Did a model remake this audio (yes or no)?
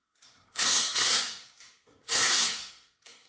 yes